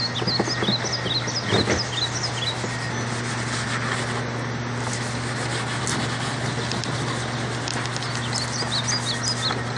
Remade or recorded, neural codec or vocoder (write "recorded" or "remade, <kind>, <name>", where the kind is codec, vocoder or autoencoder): recorded